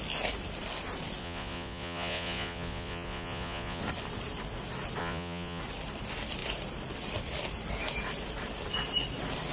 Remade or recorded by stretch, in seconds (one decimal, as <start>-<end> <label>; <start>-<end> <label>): 0.0-1.2 recorded; 1.2-3.8 remade; 3.8-5.0 recorded; 5.0-5.6 remade; 5.6-9.5 recorded